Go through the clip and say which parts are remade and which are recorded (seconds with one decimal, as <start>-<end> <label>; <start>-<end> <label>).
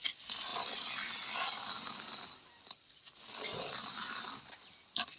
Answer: 0.0-5.2 recorded